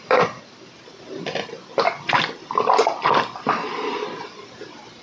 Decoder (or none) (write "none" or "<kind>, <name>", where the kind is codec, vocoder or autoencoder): vocoder, BigVGAN v2